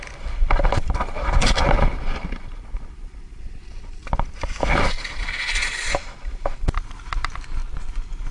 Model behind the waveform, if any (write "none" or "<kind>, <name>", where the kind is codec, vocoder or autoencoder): none